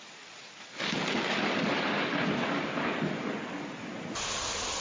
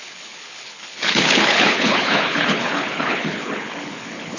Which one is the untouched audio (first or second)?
first